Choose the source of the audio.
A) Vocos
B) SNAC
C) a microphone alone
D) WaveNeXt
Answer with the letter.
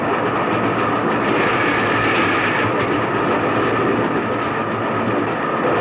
C